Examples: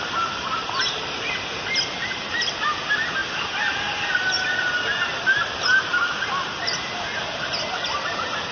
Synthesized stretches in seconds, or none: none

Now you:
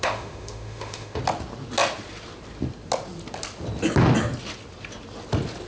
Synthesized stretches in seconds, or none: 0.0-1.2 (autoencoder, DAC-VAE)

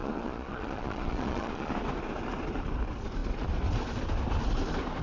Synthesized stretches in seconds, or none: 0.0-1.7 (vocoder, Vocos)

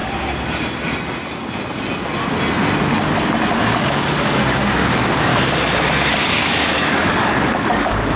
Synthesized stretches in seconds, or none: 3.8-5.3 (codec, DAC); 6.1-8.2